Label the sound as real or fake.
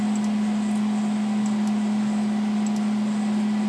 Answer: real